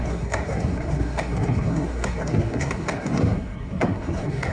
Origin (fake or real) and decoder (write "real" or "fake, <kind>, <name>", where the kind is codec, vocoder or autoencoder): fake, codec, SNAC